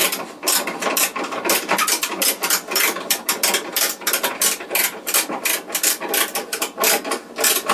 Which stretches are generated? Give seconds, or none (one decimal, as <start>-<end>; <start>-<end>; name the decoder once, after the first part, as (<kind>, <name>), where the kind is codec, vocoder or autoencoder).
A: none